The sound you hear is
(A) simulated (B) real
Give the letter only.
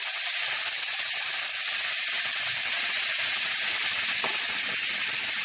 B